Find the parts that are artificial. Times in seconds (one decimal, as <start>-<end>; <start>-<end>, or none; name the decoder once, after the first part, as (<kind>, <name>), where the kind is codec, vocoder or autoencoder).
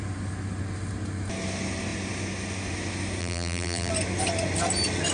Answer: 3.2-3.9 (vocoder, BigVGAN v2)